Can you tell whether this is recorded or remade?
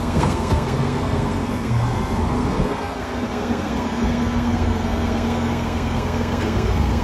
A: remade